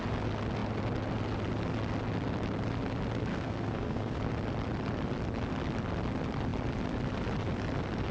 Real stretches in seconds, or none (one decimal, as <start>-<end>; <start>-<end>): 0.0-3.3; 4.2-8.1